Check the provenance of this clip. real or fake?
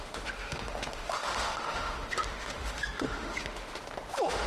fake